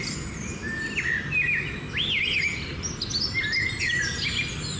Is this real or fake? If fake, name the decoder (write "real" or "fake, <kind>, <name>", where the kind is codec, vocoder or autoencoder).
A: real